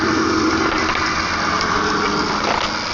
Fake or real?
real